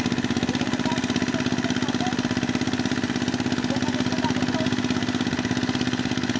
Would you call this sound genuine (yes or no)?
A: yes